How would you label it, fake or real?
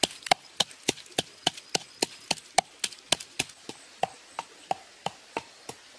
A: real